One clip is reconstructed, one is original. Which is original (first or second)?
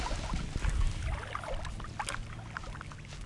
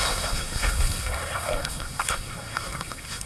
first